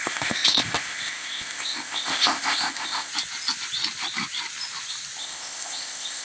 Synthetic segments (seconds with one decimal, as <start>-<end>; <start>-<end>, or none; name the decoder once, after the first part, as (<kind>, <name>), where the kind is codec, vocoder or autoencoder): 0.0-3.1 (codec, ZipCodec); 5.2-6.2